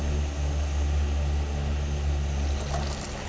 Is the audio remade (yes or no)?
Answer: no